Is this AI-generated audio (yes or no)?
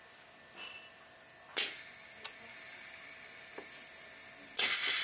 no